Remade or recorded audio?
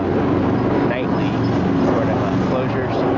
recorded